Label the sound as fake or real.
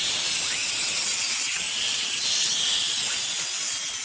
real